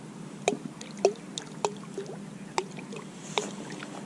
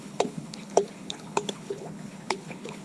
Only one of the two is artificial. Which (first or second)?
second